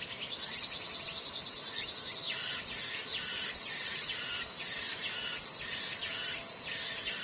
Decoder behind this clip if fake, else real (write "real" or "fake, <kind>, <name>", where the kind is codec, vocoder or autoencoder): real